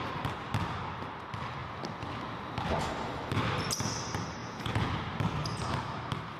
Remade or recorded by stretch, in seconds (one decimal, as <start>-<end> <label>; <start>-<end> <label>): 0.0-4.4 recorded; 4.4-4.9 remade; 4.9-6.4 recorded

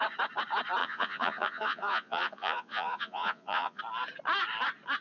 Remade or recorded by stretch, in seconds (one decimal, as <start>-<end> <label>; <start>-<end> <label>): 0.0-0.8 recorded; 0.8-3.8 remade; 3.8-5.0 recorded